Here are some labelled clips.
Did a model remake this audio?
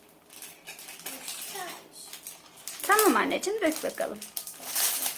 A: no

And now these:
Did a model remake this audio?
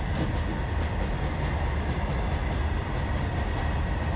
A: no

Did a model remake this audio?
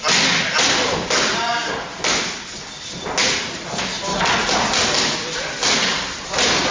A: no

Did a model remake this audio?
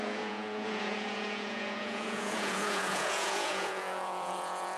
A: yes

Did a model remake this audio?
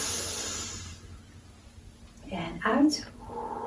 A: no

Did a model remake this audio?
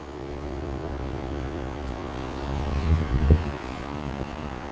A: yes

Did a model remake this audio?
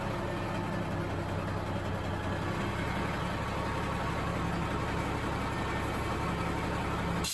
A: no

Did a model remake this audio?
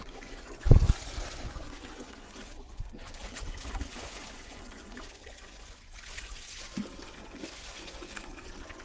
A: yes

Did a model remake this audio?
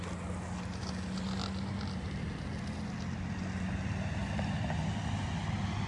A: no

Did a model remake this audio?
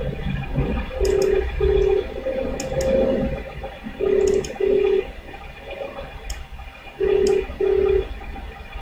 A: no